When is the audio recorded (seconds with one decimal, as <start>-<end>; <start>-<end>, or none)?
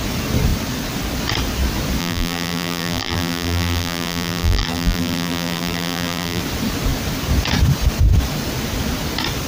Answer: 0.0-2.0; 6.4-9.5